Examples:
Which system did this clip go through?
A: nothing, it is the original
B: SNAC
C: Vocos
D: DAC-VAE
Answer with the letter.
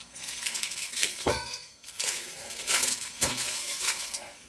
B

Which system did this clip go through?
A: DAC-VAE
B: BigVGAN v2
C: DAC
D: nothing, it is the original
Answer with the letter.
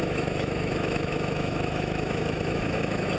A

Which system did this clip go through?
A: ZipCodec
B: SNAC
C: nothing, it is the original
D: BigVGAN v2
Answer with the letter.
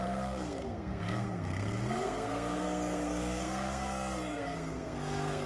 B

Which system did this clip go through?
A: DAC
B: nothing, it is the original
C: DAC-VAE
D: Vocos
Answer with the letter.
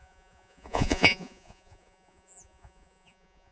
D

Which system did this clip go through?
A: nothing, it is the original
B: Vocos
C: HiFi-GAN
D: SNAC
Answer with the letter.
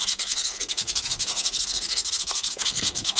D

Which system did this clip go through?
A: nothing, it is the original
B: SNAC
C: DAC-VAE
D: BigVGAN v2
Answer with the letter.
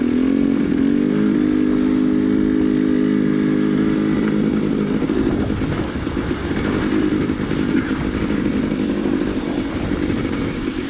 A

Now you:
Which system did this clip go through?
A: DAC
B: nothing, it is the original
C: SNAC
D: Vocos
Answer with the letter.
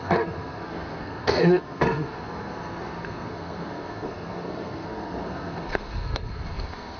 C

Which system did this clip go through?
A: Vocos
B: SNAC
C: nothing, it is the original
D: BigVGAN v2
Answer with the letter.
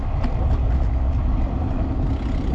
C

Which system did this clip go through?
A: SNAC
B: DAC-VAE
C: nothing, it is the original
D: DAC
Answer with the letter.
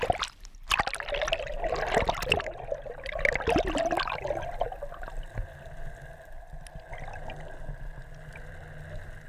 C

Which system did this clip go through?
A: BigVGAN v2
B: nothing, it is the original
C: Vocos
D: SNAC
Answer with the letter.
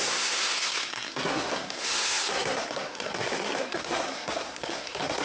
D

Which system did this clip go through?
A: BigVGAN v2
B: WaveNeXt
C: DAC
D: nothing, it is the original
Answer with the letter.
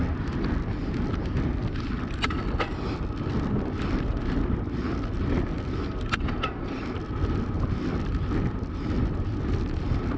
D